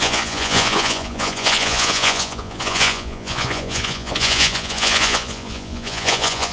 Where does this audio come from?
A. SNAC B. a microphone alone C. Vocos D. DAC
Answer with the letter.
C